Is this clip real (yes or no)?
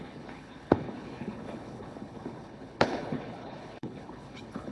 no